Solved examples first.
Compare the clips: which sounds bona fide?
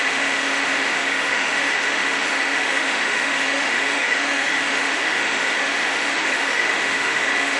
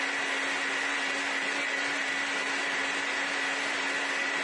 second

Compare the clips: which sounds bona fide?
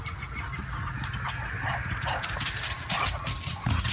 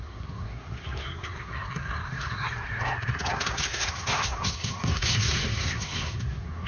first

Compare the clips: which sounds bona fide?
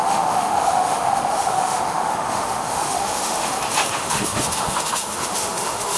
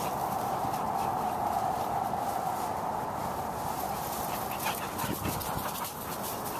second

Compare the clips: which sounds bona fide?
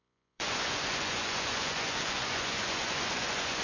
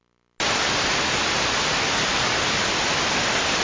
second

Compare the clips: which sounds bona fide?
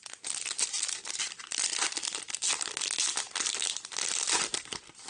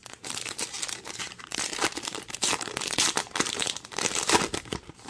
first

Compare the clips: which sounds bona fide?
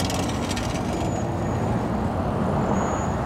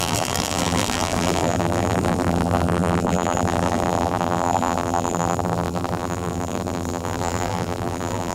first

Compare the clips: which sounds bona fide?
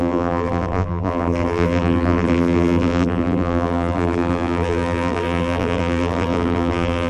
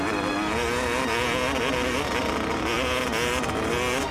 second